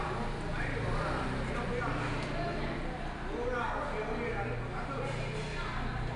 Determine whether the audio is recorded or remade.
recorded